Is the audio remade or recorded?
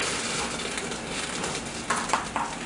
recorded